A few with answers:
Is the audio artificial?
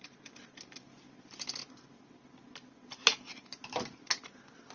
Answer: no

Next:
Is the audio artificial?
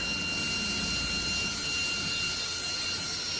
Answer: no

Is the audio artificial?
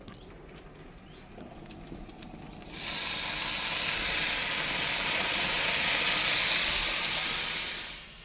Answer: no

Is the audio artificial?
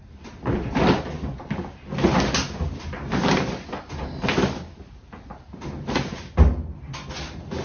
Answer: no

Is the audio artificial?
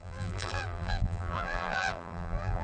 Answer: yes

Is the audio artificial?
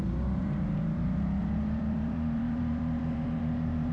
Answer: yes